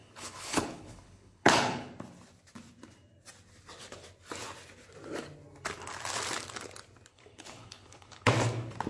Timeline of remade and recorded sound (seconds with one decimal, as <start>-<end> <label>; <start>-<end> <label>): 0.0-1.9 remade; 1.9-7.1 recorded; 7.1-8.3 remade; 8.3-8.9 recorded